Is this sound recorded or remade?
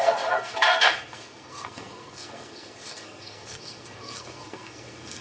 remade